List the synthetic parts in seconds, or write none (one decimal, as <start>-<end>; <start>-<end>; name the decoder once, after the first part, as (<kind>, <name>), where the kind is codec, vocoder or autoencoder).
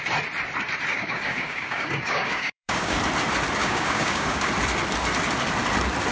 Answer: 0.9-3.0 (codec, DAC); 3.6-4.5